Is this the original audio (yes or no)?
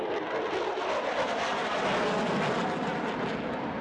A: yes